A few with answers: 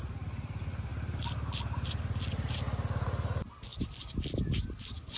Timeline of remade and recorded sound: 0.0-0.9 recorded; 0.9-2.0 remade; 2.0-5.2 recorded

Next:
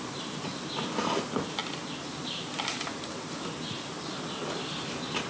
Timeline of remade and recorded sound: 0.0-5.3 recorded

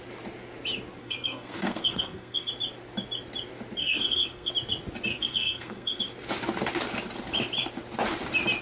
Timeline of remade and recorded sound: 0.0-1.0 recorded; 1.0-2.5 remade; 2.5-3.8 recorded; 3.8-4.5 remade; 4.5-5.1 recorded; 5.1-6.0 remade; 6.0-8.6 recorded